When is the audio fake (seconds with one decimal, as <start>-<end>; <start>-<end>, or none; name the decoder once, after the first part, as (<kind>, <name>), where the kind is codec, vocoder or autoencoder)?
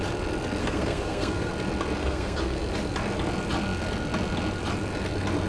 0.6-1.5 (codec, SNAC); 2.0-2.6